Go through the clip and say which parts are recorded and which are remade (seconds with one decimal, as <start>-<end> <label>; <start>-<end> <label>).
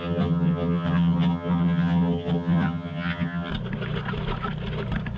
0.0-3.5 remade; 3.5-5.2 recorded